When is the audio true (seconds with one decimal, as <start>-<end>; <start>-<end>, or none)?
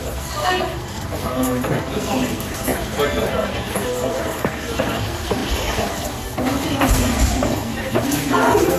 none